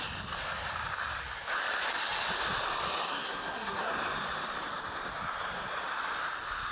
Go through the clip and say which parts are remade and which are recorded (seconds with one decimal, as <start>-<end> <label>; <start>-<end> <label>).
0.0-3.1 recorded; 3.1-3.9 remade; 3.9-6.7 recorded